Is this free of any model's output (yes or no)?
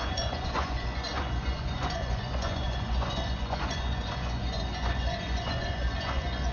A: no